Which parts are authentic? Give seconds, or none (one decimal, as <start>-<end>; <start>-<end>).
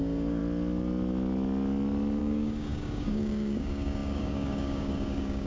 0.4-2.2